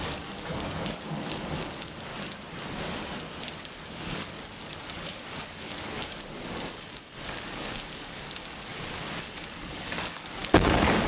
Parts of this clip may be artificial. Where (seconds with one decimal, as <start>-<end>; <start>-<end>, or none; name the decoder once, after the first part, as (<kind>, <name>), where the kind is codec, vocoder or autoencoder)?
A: 0.0-2.1 (codec, DAC); 3.9-11.1